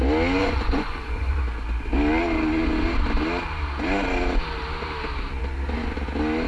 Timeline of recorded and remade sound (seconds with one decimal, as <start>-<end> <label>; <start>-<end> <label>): 0.0-0.4 recorded; 0.4-1.4 remade; 1.4-6.5 recorded